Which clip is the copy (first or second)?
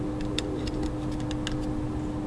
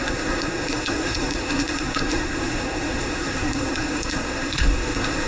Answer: second